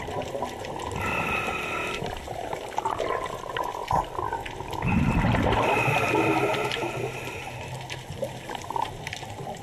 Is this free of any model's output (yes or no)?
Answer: yes